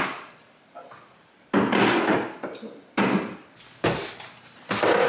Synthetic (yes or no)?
no